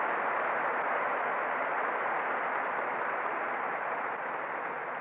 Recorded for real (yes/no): no